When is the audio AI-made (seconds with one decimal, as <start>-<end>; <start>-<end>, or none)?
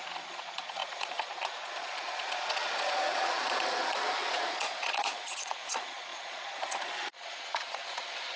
0.0-8.4